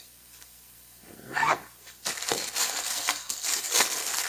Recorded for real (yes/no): no